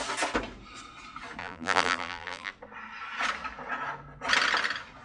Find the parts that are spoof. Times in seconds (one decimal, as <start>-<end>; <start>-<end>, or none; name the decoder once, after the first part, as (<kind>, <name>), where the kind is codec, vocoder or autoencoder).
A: 1.4-2.5 (vocoder, BigVGAN v2)